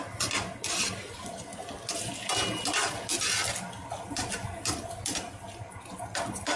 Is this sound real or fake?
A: real